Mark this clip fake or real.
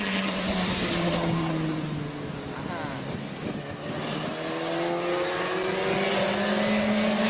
real